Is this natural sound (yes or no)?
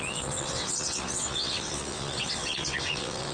no